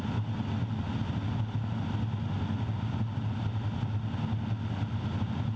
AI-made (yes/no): no